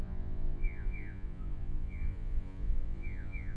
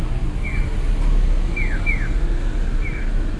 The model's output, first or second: first